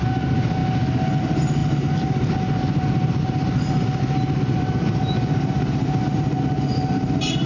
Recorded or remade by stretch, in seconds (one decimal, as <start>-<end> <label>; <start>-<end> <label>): 0.0-0.6 remade; 0.6-1.2 recorded; 1.2-7.5 remade